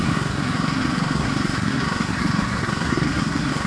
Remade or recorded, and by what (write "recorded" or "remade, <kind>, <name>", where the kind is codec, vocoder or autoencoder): remade, codec, SNAC